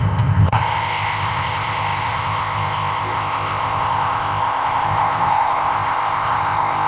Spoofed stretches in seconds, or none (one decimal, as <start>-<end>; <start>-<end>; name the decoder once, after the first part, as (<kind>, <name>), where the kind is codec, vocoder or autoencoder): 0.0-6.9 (codec, ZipCodec)